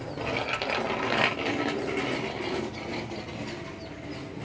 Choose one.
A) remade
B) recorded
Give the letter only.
B